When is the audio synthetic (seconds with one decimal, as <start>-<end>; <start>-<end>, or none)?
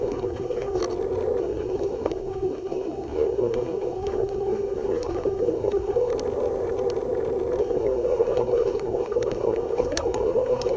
0.0-0.8; 1.4-6.1; 7.6-10.8